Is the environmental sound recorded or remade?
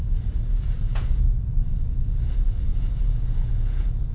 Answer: remade